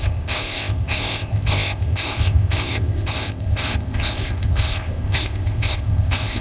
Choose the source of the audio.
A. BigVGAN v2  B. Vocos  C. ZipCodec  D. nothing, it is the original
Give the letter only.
C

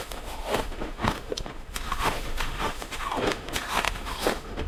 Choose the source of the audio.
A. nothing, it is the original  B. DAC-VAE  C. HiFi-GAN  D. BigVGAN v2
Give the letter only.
B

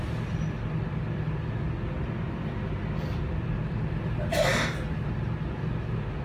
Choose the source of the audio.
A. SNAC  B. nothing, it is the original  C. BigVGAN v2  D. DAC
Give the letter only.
B